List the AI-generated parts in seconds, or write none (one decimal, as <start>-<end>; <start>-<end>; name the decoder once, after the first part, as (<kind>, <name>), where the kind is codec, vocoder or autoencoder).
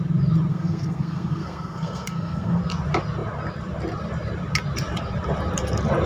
0.5-2.6 (codec, SNAC)